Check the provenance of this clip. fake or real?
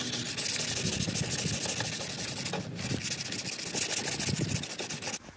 real